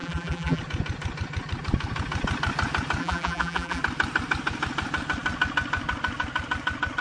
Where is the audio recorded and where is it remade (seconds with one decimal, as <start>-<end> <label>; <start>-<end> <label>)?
0.0-0.6 remade; 0.6-3.0 recorded; 3.0-3.8 remade; 3.8-7.0 recorded